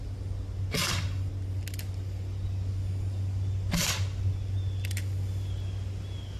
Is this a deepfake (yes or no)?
no